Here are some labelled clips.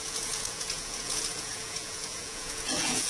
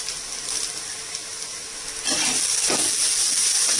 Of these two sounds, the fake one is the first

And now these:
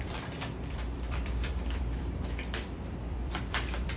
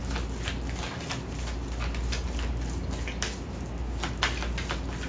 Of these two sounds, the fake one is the first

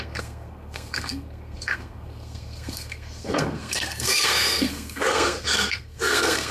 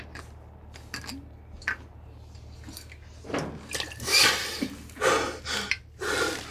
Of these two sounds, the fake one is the first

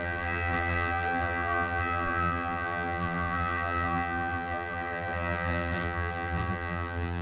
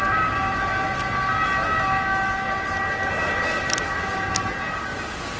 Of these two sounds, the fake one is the first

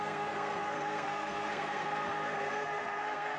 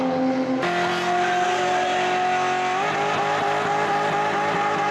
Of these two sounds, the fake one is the first